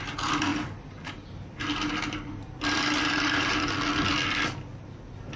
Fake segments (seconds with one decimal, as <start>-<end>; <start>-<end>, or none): 0.5-3.7